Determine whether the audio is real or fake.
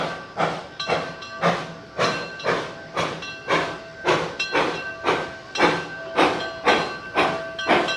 real